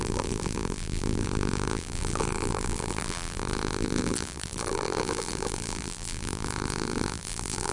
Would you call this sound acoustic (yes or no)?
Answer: no